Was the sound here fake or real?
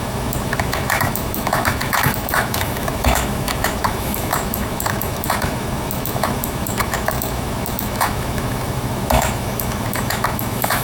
fake